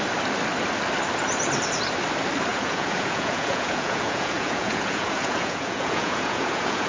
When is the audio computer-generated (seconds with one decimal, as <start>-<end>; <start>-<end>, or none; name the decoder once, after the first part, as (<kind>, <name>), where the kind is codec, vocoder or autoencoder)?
2.5-6.9 (vocoder, Vocos)